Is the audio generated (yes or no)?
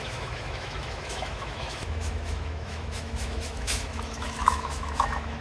yes